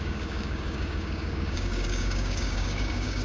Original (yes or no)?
no